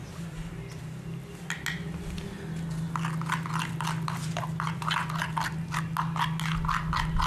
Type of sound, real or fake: real